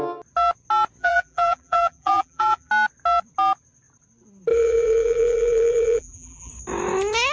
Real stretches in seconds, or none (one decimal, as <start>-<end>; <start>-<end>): 0.0-1.0; 2.7-4.5; 6.5-7.3